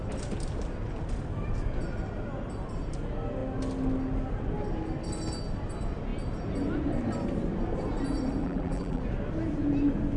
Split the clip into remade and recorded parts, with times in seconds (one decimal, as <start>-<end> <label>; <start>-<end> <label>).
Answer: 0.0-8.4 recorded; 8.4-9.0 remade; 9.0-10.2 recorded